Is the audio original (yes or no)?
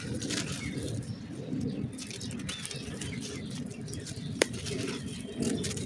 no